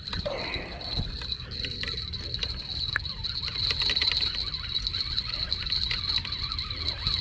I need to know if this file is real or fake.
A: real